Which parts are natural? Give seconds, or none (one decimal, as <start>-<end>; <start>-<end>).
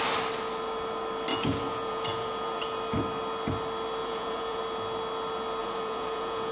0.0-1.3; 2.6-4.0; 4.6-5.6